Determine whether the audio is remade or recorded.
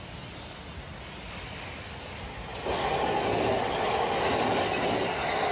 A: recorded